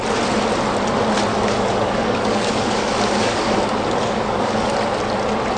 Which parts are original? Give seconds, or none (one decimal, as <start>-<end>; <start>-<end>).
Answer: 0.0-1.3; 4.7-5.6